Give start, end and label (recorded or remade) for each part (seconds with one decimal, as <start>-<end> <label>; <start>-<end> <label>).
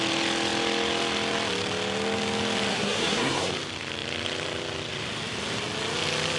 0.0-2.7 recorded; 2.7-3.5 remade; 3.5-6.4 recorded